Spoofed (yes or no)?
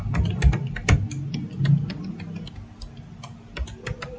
no